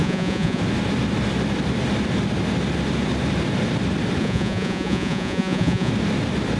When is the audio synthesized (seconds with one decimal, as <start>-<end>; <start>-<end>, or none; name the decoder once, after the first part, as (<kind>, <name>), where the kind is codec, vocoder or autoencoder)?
0.0-0.6 (vocoder, Vocos); 4.2-5.9